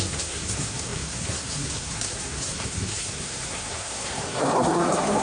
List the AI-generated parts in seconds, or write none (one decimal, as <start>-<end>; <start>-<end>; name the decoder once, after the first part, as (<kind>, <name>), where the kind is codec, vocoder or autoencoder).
0.0-5.2 (codec, SNAC)